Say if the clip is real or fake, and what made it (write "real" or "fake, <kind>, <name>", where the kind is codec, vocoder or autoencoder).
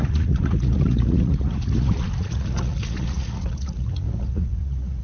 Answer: fake, vocoder, Vocos